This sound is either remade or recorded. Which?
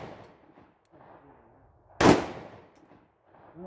recorded